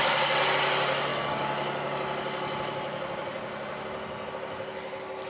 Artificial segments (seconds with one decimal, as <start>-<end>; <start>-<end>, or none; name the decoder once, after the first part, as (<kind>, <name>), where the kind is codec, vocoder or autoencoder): none